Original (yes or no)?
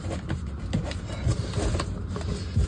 yes